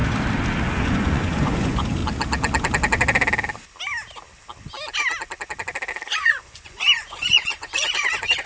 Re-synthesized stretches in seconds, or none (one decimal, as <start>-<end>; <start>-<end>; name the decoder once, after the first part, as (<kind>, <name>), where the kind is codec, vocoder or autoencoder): 0.7-2.0 (vocoder, Vocos); 5.9-8.5